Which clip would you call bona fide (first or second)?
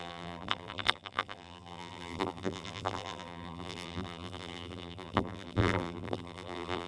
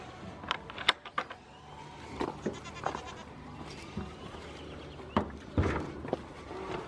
second